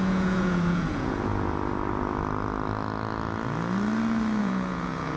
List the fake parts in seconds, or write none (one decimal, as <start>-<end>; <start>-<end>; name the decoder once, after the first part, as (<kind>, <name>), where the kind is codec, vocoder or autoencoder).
0.0-1.3 (vocoder, Vocos); 4.4-5.2